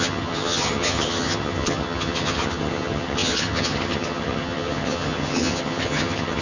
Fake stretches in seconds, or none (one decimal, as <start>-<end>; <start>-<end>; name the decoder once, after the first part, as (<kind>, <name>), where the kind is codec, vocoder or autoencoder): 0.0-6.4 (vocoder, HiFi-GAN)